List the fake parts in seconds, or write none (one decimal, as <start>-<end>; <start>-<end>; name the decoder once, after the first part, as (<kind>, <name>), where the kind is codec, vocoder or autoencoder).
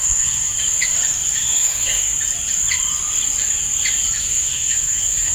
0.0-0.5 (codec, SNAC); 1.4-2.1; 4.2-5.3